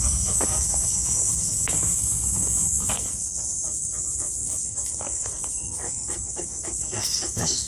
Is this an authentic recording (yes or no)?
no